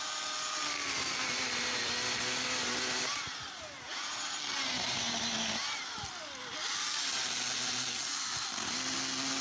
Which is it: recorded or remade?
recorded